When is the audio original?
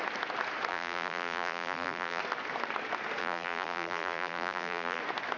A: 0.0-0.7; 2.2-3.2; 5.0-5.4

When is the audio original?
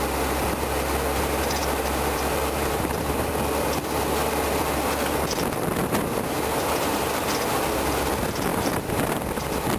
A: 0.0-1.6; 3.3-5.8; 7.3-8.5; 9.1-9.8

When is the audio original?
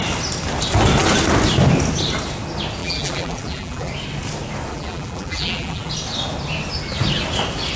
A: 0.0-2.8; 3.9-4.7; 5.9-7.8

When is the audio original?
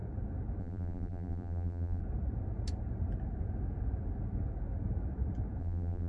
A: 0.0-0.6; 2.0-5.6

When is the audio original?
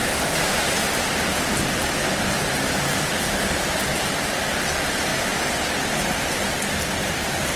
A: 4.1-5.1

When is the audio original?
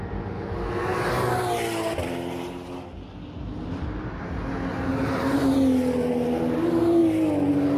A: 0.0-7.8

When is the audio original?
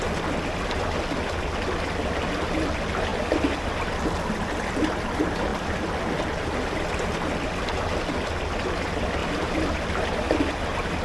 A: 0.0-3.1; 3.7-9.2; 10.4-11.0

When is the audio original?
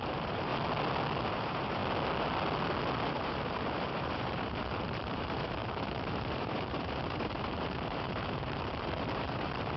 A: 0.5-1.3; 1.8-3.1